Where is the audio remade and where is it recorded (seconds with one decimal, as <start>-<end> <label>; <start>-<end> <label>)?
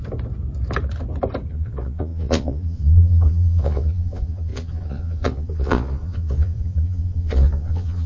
0.0-1.5 recorded; 1.5-8.1 remade